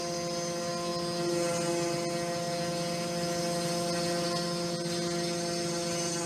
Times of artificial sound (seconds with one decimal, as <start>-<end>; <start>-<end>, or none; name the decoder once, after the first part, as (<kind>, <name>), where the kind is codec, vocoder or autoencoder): none